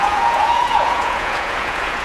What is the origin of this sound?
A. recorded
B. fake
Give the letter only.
B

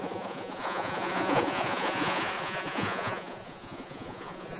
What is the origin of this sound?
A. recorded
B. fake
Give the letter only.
B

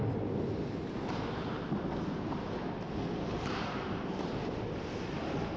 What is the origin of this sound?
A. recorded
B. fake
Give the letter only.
A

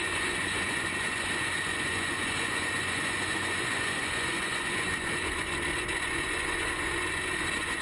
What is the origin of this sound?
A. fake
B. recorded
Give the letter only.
A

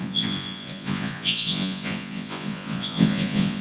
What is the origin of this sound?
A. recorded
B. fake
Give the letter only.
B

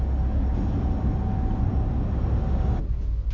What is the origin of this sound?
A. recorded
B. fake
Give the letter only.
A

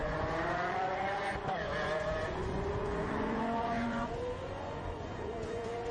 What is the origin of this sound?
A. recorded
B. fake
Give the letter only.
B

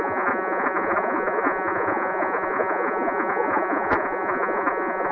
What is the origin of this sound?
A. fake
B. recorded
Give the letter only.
A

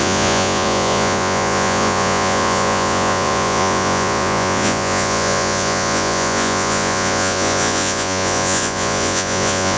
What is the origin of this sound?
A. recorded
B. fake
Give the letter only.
B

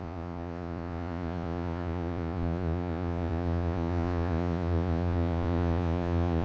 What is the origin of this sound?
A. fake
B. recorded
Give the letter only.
A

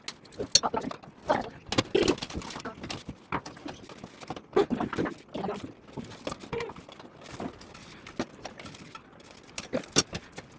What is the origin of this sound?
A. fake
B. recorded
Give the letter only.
B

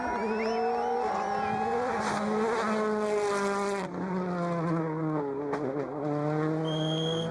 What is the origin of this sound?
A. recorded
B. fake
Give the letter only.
A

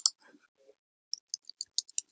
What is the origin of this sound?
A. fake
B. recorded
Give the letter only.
B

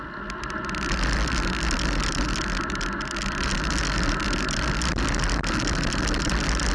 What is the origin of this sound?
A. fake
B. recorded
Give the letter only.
B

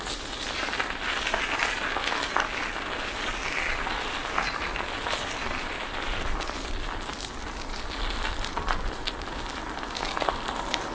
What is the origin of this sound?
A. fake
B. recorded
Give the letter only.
B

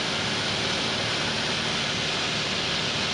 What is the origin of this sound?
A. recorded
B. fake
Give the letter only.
A